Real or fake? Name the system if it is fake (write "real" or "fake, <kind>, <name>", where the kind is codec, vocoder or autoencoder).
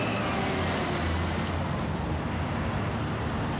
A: real